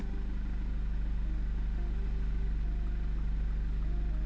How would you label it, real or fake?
real